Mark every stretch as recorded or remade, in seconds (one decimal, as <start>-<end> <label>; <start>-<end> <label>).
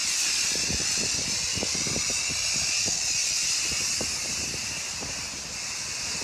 0.0-6.2 recorded